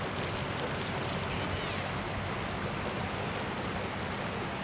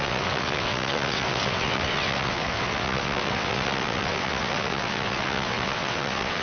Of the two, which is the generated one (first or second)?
second